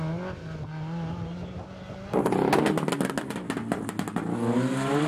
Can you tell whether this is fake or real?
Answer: real